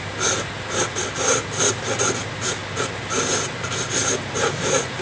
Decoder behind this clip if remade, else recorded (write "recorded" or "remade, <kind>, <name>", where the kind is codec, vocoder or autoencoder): recorded